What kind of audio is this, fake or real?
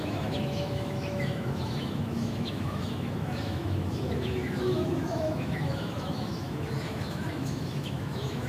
fake